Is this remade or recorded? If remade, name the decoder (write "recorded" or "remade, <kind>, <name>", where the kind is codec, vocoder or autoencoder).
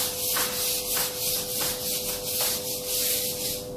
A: recorded